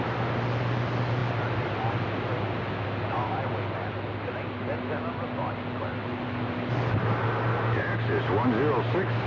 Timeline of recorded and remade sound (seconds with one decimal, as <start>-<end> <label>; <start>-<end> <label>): 0.0-9.3 recorded